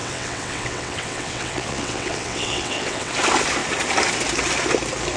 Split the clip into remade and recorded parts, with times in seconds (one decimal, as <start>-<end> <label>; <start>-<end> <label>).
0.0-3.1 remade; 3.1-5.2 recorded